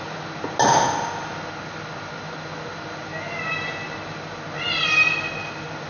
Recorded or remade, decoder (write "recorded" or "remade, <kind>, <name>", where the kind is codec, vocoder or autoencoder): recorded